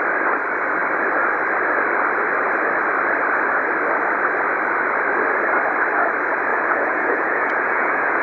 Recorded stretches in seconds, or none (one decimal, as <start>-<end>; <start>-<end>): 0.0-6.5